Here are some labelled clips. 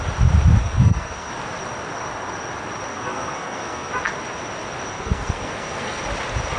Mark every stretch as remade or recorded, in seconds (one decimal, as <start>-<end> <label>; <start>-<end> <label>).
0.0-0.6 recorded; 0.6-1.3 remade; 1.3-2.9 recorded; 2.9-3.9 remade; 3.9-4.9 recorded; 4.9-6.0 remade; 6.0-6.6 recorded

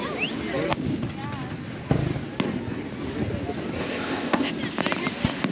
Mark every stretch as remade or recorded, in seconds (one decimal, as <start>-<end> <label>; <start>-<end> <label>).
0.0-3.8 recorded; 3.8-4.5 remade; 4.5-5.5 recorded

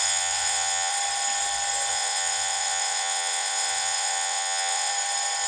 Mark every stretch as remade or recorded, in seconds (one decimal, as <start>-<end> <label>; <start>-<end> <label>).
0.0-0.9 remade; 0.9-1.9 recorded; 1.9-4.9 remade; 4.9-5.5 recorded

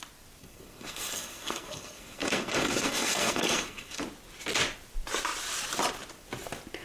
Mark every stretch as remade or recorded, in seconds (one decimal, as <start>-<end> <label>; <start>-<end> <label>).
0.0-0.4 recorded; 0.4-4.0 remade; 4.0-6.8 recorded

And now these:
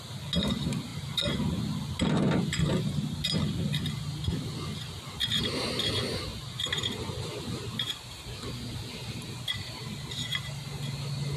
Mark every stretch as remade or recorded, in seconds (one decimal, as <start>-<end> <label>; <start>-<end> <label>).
0.0-6.3 recorded; 6.3-7.3 remade; 7.3-11.4 recorded

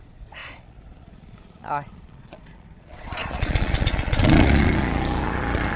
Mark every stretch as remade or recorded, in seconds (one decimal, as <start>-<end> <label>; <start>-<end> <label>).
0.0-5.8 remade

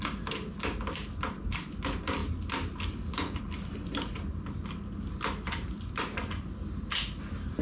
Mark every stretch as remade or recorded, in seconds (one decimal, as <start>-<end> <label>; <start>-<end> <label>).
0.0-7.6 recorded